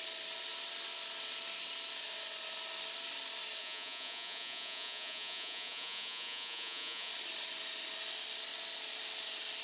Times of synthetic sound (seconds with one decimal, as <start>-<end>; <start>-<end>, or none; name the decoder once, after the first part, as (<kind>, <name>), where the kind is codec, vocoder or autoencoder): 3.6-7.1 (vocoder, Vocos)